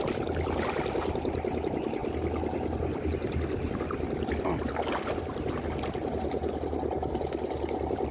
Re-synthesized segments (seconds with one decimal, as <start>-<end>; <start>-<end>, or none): none